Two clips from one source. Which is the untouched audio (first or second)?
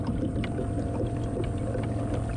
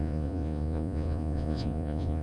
first